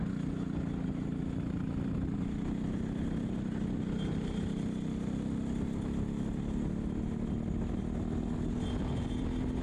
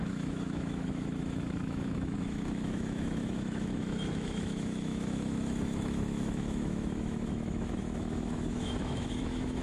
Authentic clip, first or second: first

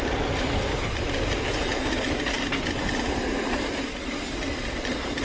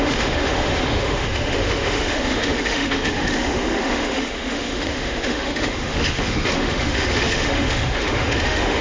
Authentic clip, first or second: first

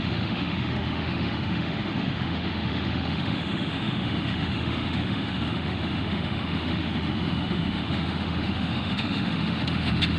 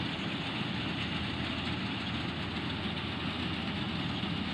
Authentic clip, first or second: second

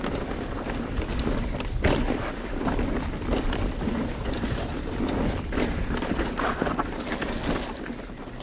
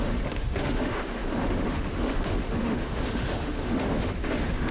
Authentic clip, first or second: first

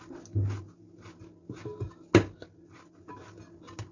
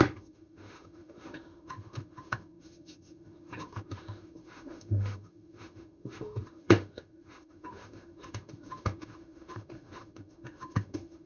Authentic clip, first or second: first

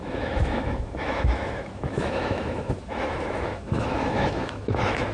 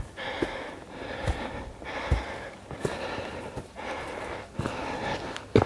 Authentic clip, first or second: second